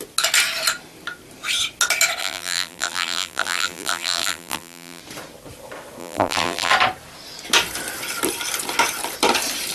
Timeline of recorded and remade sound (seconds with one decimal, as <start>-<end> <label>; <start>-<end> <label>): 0.0-2.2 recorded; 2.2-5.0 remade; 5.0-6.0 recorded; 6.0-6.7 remade; 6.7-9.7 recorded